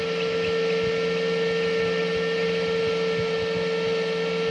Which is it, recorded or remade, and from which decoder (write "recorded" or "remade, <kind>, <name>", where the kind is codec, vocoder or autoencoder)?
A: recorded